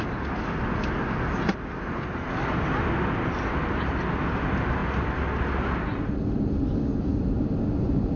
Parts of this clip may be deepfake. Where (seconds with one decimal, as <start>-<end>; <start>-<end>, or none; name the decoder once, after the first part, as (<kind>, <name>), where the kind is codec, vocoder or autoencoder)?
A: none